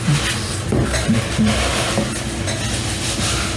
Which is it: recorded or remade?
recorded